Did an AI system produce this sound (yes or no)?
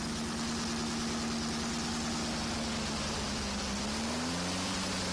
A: no